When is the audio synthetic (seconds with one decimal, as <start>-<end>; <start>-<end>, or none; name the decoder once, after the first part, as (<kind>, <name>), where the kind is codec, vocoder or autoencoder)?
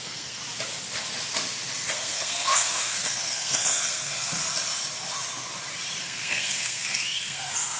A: 0.0-0.4 (codec, SNAC); 1.9-4.4; 6.0-7.8